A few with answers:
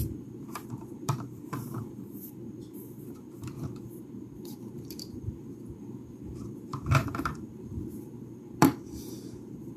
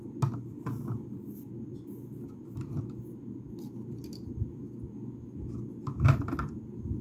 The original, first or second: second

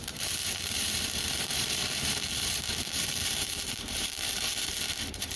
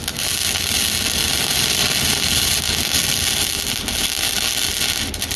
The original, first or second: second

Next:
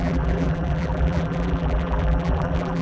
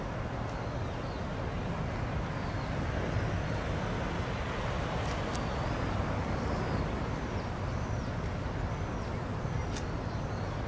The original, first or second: second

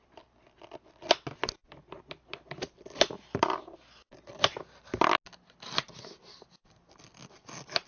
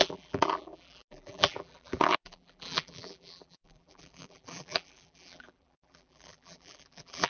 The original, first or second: first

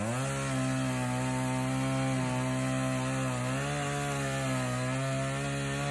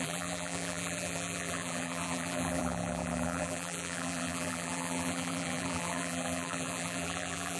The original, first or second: first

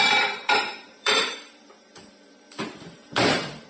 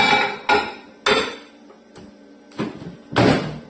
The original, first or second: second